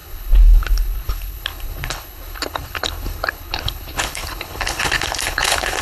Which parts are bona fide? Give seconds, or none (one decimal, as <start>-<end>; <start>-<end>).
none